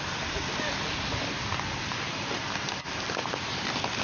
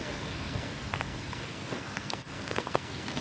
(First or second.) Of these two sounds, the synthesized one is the second